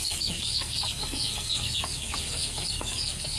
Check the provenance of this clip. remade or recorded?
remade